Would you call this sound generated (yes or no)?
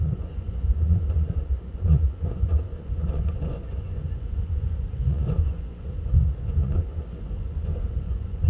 yes